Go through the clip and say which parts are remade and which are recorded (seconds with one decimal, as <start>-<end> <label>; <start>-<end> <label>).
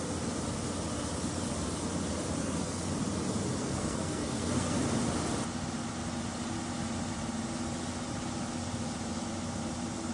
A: 0.0-2.4 recorded; 2.4-2.9 remade; 2.9-3.6 recorded; 3.6-4.8 remade; 4.8-10.1 recorded